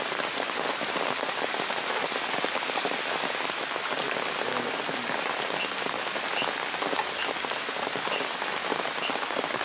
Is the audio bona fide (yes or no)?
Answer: yes